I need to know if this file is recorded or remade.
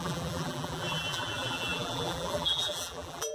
remade